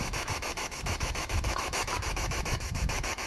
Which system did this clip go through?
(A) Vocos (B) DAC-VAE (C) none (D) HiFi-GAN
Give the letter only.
B